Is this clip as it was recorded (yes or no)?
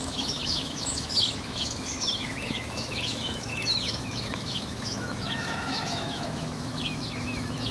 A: no